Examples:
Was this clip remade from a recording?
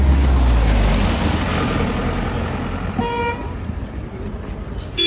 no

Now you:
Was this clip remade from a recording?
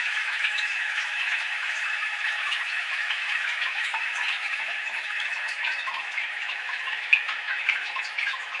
yes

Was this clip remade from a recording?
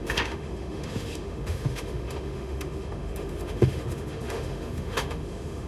yes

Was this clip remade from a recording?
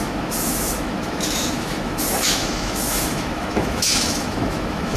yes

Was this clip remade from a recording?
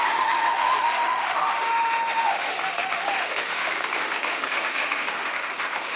yes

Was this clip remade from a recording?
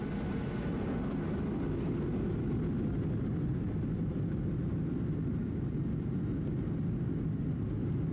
no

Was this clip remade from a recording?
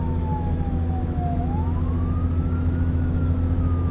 yes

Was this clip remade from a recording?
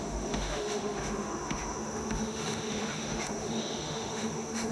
yes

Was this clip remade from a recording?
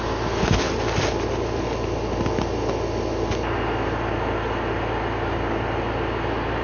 no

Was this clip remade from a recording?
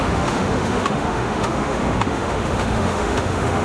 yes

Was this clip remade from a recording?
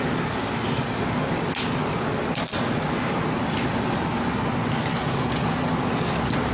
no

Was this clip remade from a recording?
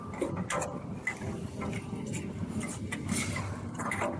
no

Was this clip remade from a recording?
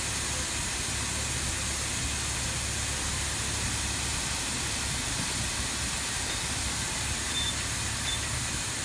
no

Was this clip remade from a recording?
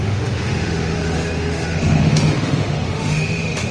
yes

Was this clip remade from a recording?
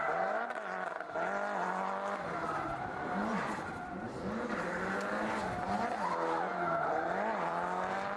no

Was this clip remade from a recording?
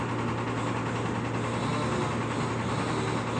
no